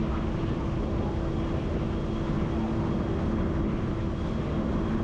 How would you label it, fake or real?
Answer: real